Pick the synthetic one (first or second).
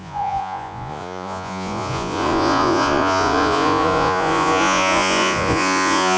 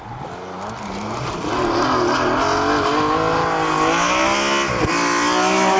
first